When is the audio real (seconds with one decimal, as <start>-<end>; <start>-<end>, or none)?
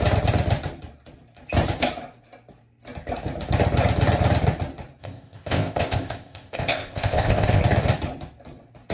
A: 0.0-5.0; 7.6-8.9